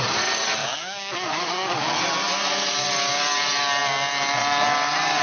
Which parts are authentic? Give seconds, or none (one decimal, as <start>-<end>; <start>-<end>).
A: 0.0-0.6; 2.0-5.2